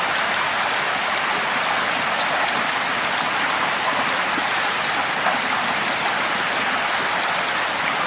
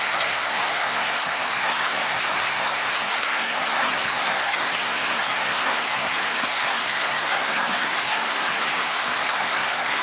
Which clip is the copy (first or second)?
second